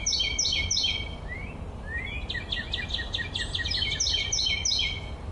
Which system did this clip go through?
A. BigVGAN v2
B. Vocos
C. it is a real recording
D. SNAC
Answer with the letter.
C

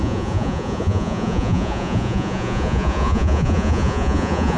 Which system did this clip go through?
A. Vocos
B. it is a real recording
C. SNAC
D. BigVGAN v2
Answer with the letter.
A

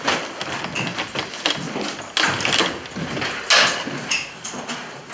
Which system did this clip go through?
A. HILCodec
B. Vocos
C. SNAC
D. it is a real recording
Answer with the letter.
D